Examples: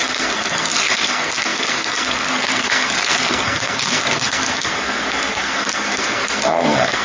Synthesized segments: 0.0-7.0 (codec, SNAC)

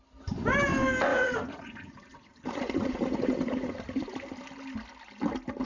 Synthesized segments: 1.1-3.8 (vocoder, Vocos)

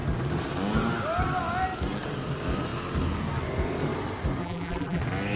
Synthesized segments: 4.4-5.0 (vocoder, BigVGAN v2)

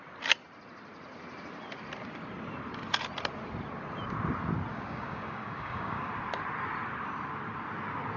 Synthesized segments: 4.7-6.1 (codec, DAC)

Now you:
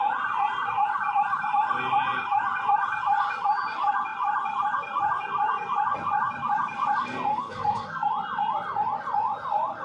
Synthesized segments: 7.3-8.1 (codec, SNAC)